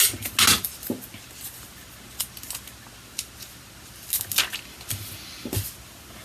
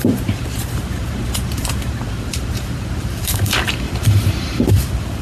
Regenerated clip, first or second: second